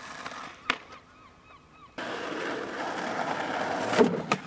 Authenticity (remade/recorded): recorded